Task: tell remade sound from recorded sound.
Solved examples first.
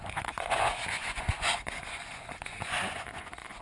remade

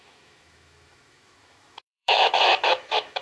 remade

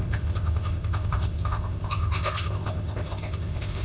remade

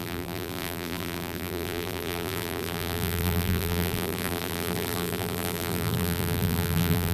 remade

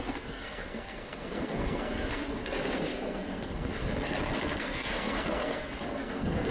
remade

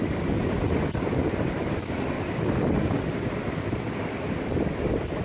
recorded